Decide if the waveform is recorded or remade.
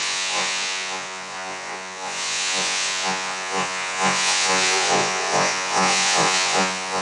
remade